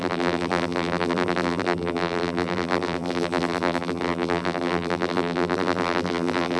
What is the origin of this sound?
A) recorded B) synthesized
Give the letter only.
B